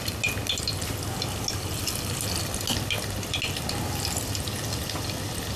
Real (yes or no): yes